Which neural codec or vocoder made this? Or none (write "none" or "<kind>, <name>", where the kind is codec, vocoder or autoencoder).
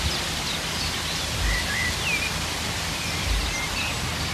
none